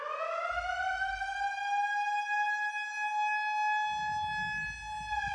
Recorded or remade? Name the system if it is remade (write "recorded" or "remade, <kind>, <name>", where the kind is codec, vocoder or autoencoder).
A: recorded